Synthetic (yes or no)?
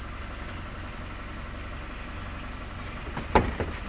no